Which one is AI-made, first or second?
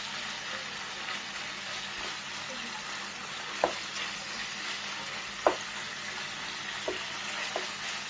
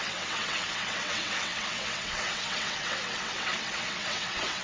second